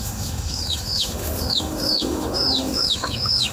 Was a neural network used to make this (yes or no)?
yes